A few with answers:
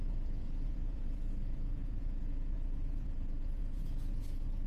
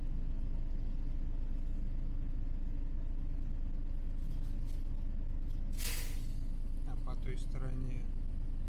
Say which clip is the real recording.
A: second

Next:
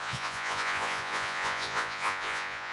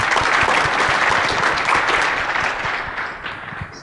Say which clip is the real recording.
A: second